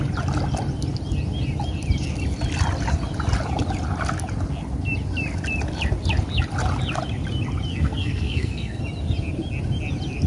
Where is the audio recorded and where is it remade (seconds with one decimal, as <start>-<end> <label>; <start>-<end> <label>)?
0.0-7.7 recorded; 7.7-8.8 remade; 8.8-10.3 recorded